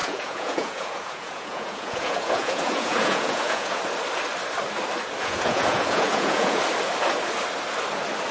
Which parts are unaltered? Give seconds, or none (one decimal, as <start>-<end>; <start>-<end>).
3.8-5.2; 6.6-8.3